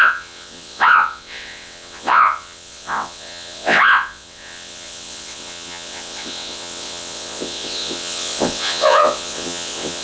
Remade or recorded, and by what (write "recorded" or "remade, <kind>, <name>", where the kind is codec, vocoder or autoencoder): remade, vocoder, WaveNeXt